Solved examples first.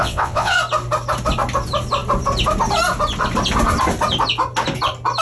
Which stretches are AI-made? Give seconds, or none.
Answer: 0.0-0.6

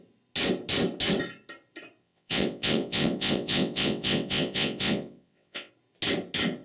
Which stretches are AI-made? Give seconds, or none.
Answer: 2.0-5.7

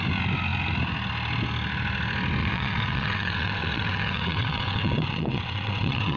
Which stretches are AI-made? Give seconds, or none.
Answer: 2.4-6.2

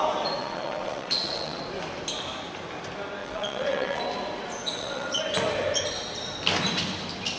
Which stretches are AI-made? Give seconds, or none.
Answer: 0.4-1.6; 3.2-4.0; 4.7-5.2

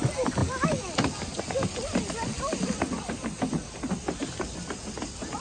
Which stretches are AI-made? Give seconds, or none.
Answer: none